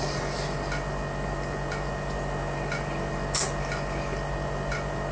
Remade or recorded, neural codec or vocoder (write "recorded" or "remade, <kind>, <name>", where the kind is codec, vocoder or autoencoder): recorded